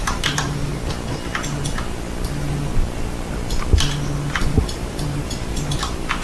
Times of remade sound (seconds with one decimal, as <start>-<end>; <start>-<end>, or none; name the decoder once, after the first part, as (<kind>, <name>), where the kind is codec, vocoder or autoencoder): 0.0-0.7 (vocoder, BigVGAN v2); 4.4-6.2